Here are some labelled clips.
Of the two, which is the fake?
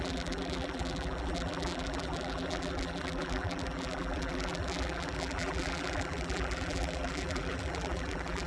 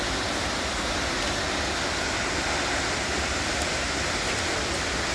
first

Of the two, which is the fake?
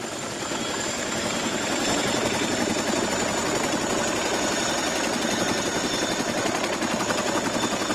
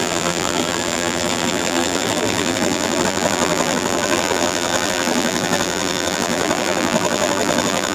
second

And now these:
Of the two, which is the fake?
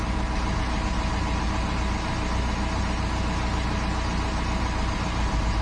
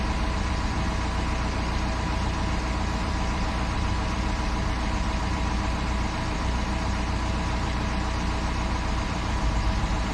second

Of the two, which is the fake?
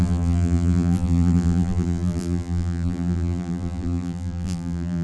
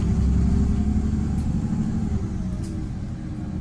first